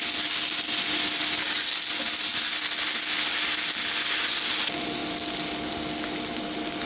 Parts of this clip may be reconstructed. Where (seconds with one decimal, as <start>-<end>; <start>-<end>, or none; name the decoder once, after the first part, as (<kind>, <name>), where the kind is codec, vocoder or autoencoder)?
none